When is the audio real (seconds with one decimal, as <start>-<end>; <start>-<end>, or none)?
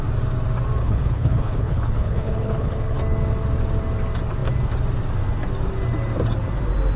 0.0-0.8; 3.0-7.0